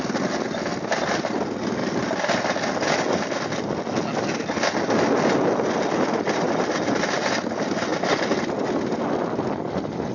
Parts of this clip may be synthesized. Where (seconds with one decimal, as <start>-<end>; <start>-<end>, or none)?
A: none